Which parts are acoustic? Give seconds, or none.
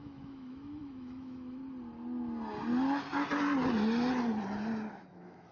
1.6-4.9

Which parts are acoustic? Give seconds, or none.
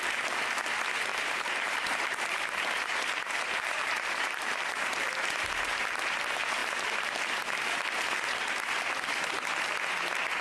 0.0-1.1; 4.9-10.4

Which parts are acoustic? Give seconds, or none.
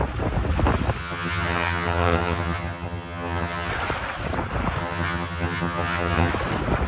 0.0-1.0; 3.7-4.8; 6.3-6.9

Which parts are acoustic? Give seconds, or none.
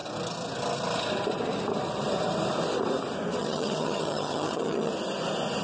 0.0-3.4; 4.9-5.6